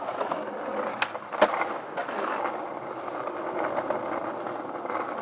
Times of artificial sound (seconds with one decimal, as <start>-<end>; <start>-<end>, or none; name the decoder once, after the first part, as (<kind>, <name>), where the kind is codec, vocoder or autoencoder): none